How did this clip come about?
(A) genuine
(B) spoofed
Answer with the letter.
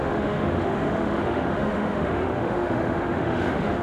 B